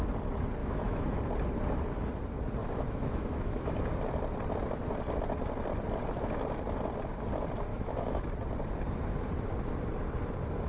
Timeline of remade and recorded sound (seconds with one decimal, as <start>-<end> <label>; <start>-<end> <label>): 0.0-0.6 recorded; 0.6-1.2 remade; 1.2-2.6 recorded; 2.6-3.9 remade; 3.9-7.7 recorded; 7.7-8.3 remade; 8.3-10.7 recorded